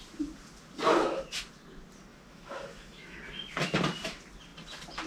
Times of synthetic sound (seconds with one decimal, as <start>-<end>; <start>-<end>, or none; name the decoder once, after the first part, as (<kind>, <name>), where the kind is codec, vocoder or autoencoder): 2.1-3.2 (autoencoder, DAC-VAE)